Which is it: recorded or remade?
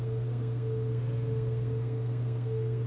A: remade